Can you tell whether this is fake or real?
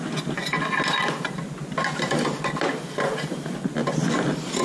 real